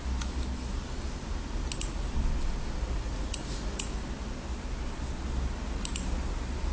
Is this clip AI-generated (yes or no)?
no